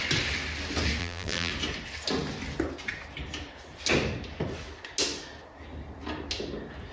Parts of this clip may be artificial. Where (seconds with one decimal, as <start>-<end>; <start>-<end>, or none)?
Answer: 1.0-1.5